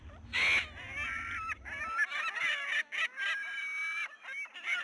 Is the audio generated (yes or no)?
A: no